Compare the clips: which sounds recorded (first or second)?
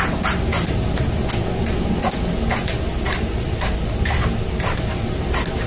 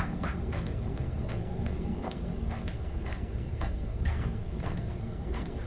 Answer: first